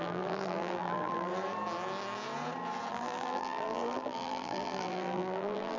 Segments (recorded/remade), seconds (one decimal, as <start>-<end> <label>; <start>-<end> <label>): 0.0-1.3 remade; 1.3-2.9 recorded; 2.9-5.8 remade